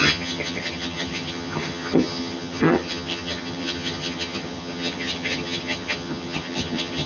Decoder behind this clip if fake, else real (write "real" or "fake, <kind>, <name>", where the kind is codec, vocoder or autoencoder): fake, vocoder, HiFi-GAN